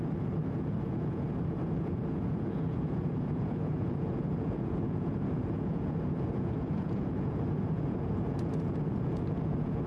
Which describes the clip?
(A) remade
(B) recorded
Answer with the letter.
A